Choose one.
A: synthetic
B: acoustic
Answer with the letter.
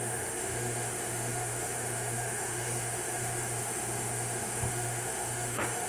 A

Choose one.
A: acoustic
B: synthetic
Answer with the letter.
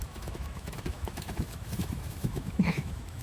B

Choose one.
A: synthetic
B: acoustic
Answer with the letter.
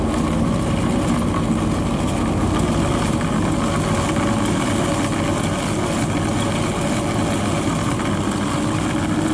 B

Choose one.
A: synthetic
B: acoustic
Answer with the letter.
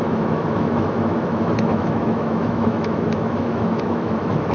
A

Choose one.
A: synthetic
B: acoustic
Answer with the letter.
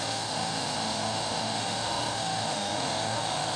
A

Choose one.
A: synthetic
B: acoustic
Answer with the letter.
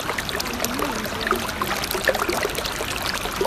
B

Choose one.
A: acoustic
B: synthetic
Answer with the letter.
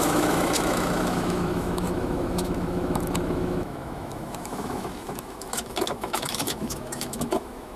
B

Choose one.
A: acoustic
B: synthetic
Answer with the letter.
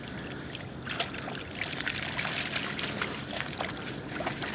A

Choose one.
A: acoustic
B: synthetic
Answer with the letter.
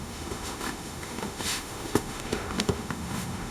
B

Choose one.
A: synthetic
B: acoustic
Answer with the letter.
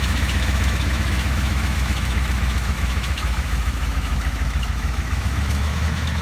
A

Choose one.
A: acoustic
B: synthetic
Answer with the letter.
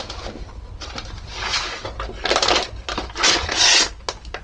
A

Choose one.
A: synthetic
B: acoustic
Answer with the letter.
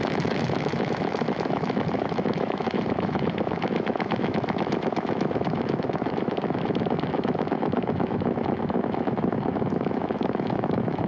A